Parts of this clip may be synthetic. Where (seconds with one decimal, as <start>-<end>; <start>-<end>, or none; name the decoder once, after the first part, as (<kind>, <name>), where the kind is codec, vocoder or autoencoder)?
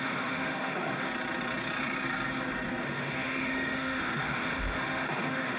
0.0-1.1 (autoencoder, DAC-VAE); 2.8-5.6